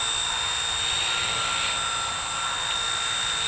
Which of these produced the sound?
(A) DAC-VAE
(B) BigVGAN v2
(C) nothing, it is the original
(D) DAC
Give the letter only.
C